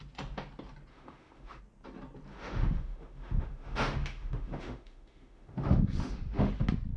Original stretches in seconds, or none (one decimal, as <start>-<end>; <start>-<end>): 0.0-0.9; 1.6-2.3; 6.5-7.0